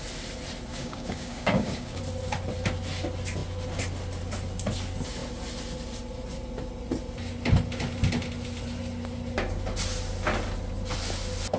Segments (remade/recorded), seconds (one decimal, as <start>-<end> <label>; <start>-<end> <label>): 0.0-0.7 recorded; 0.7-2.0 remade; 2.0-11.6 recorded